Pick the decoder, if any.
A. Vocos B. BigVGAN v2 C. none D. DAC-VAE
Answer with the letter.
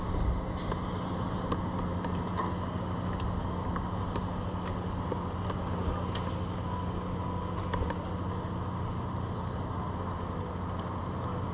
C